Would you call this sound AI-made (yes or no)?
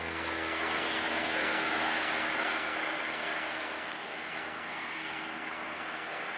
yes